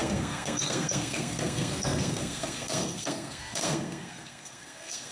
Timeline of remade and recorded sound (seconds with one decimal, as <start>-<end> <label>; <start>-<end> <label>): 0.0-5.1 remade